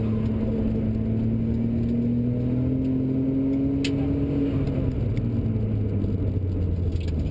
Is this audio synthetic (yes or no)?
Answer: no